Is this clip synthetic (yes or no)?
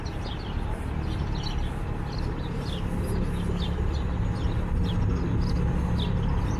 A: no